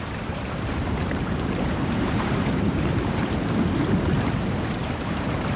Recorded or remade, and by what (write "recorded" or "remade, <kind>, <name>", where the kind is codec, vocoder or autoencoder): remade, vocoder, BigVGAN v2